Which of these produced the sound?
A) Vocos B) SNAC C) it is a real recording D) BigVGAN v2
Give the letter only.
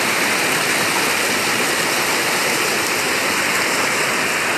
C